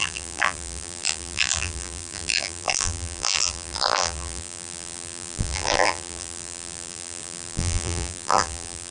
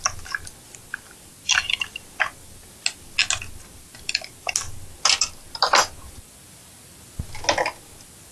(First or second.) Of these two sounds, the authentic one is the second